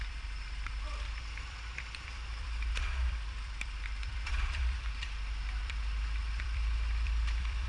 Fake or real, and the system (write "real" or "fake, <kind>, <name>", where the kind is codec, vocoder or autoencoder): fake, vocoder, BigVGAN v2